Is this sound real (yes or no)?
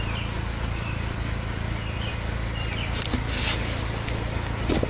yes